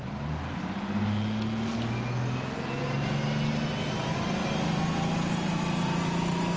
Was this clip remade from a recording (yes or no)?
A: no